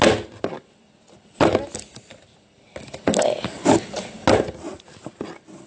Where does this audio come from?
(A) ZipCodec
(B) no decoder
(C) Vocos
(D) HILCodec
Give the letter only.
B